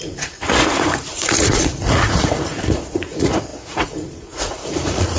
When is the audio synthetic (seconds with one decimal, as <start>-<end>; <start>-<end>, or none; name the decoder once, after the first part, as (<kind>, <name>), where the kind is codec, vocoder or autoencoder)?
0.0-5.2 (vocoder, Vocos)